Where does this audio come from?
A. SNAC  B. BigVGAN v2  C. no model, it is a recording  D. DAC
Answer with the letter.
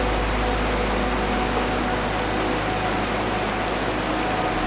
C